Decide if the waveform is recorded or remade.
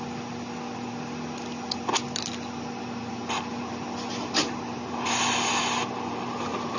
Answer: recorded